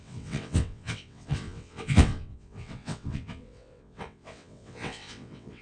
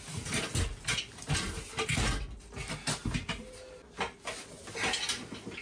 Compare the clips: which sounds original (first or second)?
second